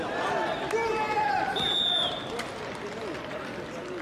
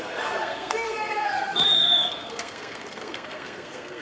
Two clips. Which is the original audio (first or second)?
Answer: first